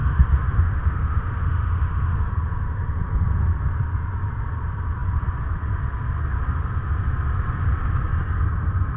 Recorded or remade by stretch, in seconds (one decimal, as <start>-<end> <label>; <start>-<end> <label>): 0.0-2.3 remade; 2.3-9.0 recorded